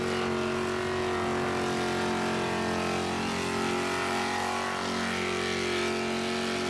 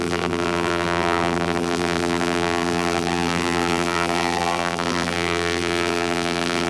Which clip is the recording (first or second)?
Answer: first